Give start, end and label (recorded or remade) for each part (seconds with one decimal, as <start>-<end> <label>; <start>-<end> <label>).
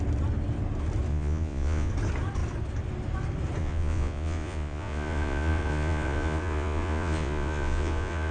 0.0-1.1 recorded; 1.1-1.9 remade; 1.9-3.6 recorded; 3.6-8.3 remade